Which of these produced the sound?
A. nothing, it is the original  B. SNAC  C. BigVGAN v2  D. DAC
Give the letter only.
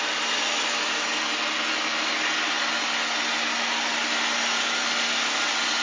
A